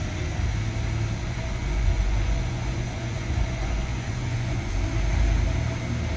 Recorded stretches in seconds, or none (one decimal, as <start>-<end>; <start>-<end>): 0.0-1.2; 4.7-6.2

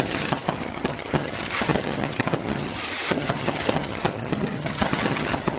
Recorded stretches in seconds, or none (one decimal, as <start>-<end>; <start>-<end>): none

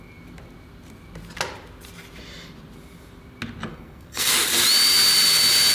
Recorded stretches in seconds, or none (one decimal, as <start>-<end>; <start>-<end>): 0.0-3.7; 4.3-5.7

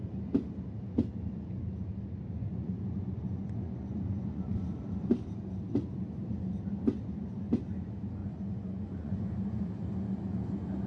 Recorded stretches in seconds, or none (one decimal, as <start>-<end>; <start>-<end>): 0.0-2.5; 4.5-8.2; 9.3-10.9

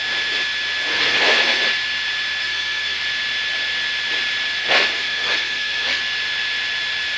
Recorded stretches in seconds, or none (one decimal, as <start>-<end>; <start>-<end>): 0.0-0.9; 1.6-2.4; 3.0-4.6; 6.0-7.2